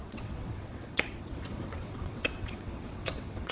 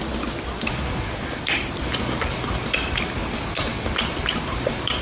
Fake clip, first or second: first